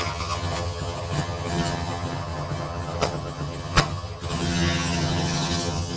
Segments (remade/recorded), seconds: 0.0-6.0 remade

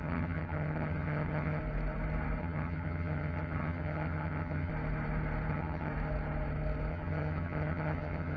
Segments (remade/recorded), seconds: 0.0-1.6 remade; 1.6-2.4 recorded; 2.4-4.7 remade; 4.7-5.5 recorded; 5.5-5.9 remade; 5.9-6.9 recorded; 6.9-8.4 remade

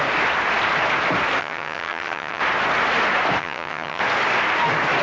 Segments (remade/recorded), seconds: 0.0-1.4 recorded; 1.4-2.4 remade; 2.4-3.4 recorded; 3.4-4.0 remade; 4.0-5.0 recorded

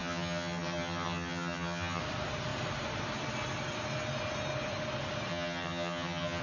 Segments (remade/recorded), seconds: 0.0-2.0 remade; 2.0-5.3 recorded; 5.3-6.4 remade

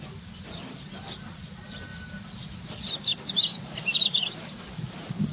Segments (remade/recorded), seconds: 0.0-5.3 recorded